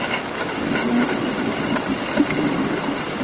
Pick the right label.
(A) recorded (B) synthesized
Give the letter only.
A